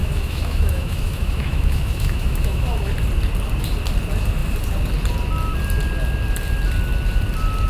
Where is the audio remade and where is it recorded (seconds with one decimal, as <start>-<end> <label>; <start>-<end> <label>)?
0.0-2.9 remade; 2.9-7.7 recorded